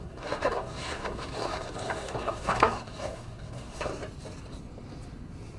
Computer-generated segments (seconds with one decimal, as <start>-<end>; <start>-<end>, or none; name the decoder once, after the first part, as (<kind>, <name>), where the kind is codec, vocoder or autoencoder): 0.0-3.9 (codec, SNAC)